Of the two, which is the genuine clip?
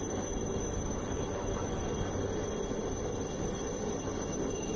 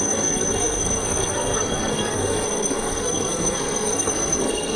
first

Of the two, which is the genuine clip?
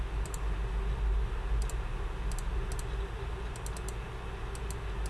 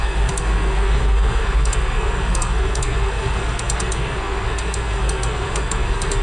first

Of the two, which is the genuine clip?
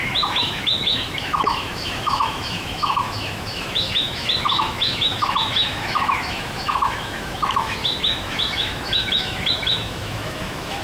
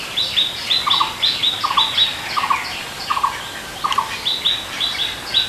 second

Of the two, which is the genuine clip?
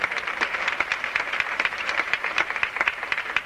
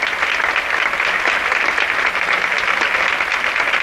second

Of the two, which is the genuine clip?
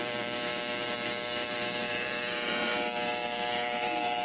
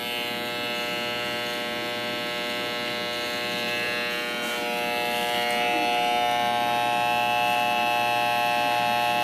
second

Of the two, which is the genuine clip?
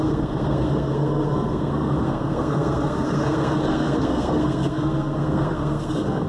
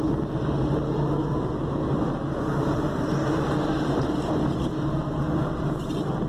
second